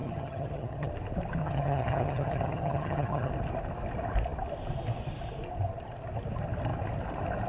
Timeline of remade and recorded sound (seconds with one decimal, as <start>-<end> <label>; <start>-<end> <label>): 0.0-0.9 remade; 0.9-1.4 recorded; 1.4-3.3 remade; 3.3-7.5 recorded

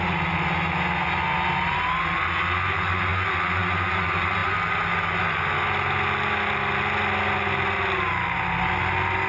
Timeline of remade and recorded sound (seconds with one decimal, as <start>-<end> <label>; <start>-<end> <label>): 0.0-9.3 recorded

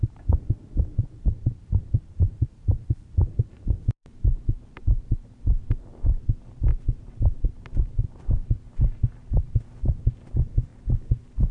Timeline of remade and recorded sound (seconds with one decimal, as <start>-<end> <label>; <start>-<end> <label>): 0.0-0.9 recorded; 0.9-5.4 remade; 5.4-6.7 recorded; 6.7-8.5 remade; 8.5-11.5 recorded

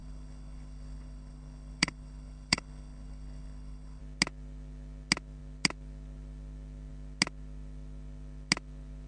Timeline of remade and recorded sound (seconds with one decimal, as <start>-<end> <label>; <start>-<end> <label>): 0.0-4.0 remade; 4.0-9.1 recorded

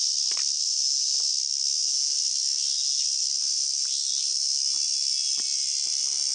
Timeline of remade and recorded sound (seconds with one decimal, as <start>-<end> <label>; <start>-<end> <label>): 0.0-6.3 recorded